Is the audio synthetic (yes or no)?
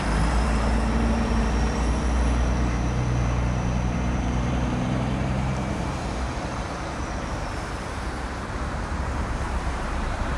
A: yes